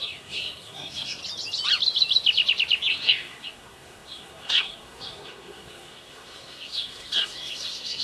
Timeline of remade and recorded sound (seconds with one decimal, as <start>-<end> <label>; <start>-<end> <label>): 0.0-1.2 remade; 1.2-2.9 recorded; 2.9-8.0 remade